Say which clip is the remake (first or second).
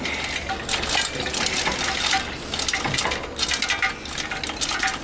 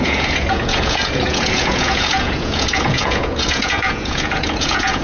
second